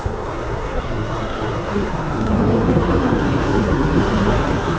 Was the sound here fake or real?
fake